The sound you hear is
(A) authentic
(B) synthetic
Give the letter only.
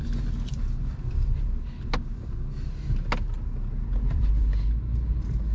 A